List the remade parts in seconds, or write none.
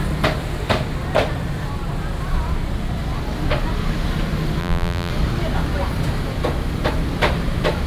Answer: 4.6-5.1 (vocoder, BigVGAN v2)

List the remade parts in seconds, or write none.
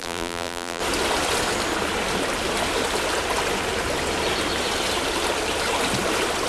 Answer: 0.0-0.8 (vocoder, BigVGAN v2)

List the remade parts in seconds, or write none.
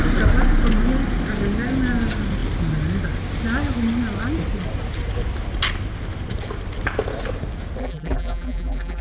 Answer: 7.8-9.0 (vocoder, BigVGAN v2)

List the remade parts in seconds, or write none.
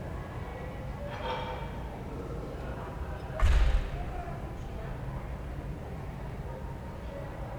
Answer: 0.0-0.5 (vocoder, BigVGAN v2); 3.8-7.6